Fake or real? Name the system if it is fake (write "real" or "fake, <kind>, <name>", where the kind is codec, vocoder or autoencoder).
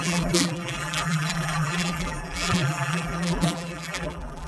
fake, vocoder, BigVGAN v2